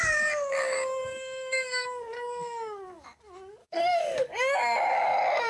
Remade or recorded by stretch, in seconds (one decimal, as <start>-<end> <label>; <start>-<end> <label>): 0.0-3.2 remade; 3.2-3.6 recorded; 3.6-5.5 remade